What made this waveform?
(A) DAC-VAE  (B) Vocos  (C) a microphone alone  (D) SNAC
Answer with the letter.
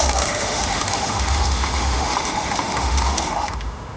A